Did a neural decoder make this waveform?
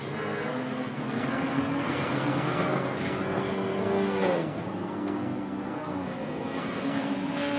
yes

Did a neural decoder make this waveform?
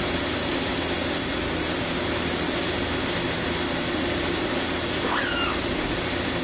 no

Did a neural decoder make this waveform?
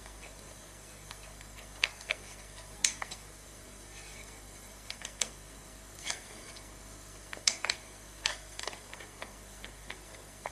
yes